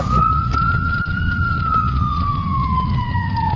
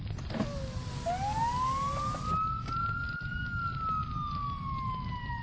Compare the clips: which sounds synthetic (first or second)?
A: first